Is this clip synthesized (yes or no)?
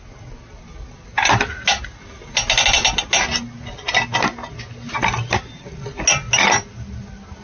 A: no